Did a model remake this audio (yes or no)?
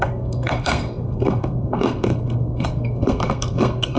yes